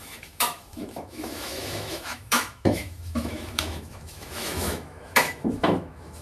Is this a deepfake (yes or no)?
yes